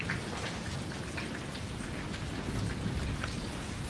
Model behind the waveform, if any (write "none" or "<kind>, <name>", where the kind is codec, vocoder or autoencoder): none